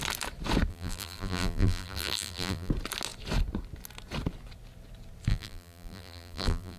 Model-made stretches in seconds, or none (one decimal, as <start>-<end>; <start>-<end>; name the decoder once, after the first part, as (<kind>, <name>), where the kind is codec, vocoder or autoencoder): 0.7-2.7 (vocoder, BigVGAN v2); 5.3-6.8